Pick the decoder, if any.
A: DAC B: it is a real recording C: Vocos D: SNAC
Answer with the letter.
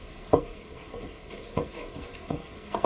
D